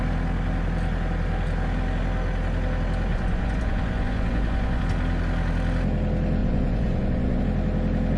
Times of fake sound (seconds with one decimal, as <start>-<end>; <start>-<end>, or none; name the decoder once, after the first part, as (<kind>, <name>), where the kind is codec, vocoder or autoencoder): 3.1-4.8 (vocoder, Vocos); 6.4-7.4